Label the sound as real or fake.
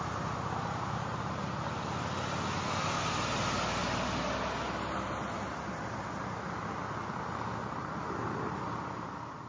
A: real